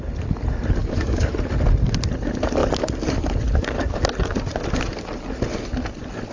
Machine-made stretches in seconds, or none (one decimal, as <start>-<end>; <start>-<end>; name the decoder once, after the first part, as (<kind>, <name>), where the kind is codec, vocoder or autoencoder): 0.8-1.3 (codec, DAC); 2.6-3.1